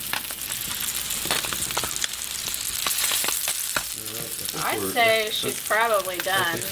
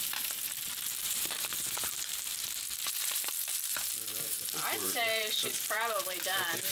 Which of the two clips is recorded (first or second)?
first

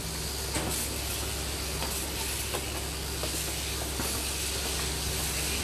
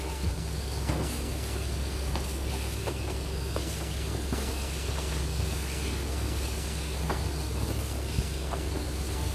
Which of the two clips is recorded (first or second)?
first